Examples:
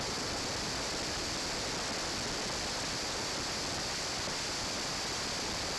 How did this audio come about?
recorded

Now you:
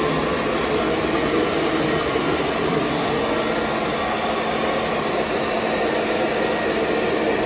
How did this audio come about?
recorded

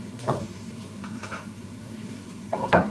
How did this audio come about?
remade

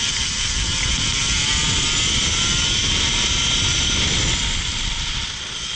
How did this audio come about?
recorded